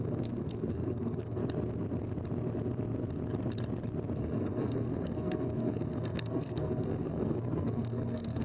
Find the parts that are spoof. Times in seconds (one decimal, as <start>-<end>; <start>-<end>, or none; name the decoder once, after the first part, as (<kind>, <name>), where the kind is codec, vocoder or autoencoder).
0.0-1.4 (codec, SNAC); 4.2-8.4